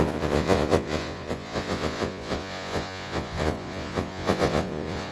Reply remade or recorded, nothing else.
remade